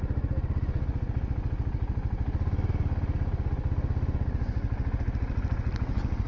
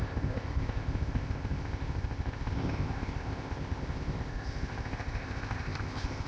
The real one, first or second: first